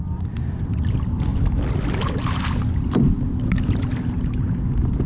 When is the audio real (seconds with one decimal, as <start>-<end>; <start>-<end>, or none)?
0.0-5.1